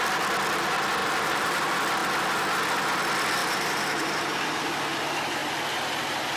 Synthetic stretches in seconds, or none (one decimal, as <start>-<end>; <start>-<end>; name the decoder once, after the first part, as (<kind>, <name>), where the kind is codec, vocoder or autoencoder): 1.0-1.6 (vocoder, BigVGAN v2); 3.4-4.6